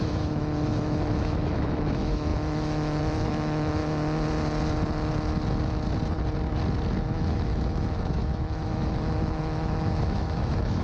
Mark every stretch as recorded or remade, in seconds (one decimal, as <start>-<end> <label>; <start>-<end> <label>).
0.0-3.8 remade; 3.8-7.1 recorded; 7.1-10.8 remade